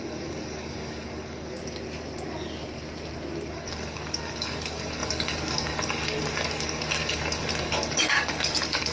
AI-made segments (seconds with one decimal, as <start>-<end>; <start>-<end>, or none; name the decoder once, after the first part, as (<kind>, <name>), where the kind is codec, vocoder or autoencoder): 0.0-1.6 (codec, DAC); 3.5-8.9